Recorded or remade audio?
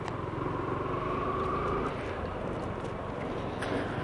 recorded